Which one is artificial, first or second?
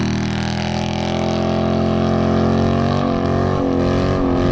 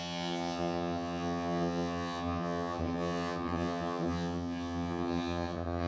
second